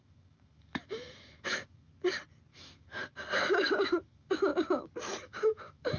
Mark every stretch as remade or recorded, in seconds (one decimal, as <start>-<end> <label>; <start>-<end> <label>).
0.0-1.9 remade; 1.9-2.5 recorded; 2.5-3.0 remade; 3.0-3.6 recorded; 3.6-4.5 remade; 4.5-5.2 recorded; 5.2-6.0 remade